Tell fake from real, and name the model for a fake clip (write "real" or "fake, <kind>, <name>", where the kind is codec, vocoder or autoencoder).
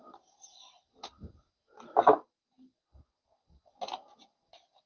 real